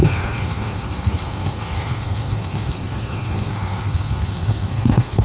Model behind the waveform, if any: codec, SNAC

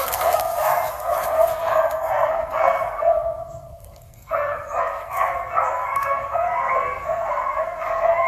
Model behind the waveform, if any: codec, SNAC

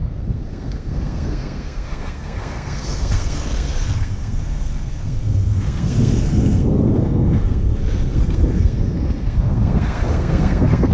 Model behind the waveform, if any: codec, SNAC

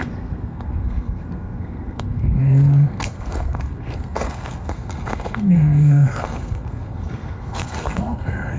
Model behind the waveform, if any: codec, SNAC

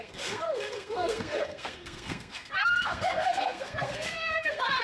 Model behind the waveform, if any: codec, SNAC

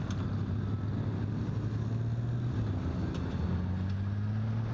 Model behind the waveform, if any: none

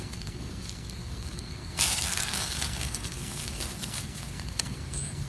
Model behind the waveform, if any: codec, SNAC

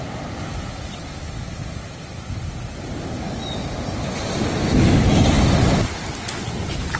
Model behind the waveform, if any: none